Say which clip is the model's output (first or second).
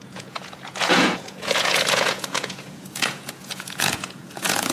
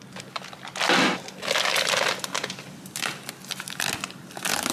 first